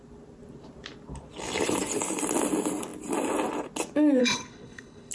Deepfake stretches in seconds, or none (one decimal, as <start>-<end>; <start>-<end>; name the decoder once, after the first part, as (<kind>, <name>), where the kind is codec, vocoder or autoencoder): 4.2-5.1 (codec, HILCodec)